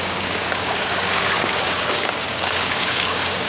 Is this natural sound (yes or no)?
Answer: no